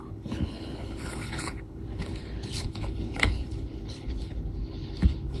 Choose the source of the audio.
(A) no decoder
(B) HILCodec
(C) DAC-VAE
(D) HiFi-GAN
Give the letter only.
B